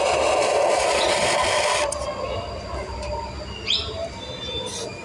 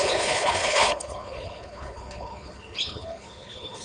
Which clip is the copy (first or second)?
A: second